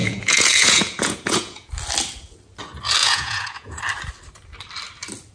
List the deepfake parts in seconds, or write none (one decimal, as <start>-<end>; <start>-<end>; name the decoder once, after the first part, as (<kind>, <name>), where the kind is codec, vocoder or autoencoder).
0.0-1.7 (vocoder, Vocos); 3.0-3.8